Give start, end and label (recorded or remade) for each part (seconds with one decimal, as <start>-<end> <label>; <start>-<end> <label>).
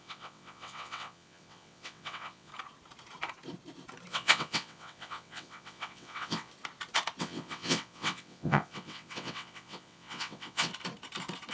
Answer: 0.0-2.5 remade; 2.5-4.1 recorded; 4.1-6.5 remade; 6.5-7.2 recorded; 7.2-10.7 remade; 10.7-11.5 recorded